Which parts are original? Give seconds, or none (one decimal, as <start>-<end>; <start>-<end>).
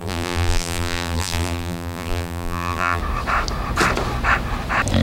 3.0-5.0